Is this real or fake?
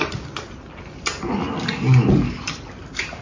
fake